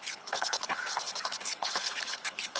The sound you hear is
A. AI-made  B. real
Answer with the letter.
A